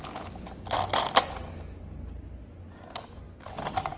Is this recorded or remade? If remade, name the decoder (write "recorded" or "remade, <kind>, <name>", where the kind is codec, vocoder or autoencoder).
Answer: recorded